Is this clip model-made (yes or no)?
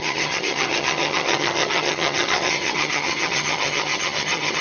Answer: yes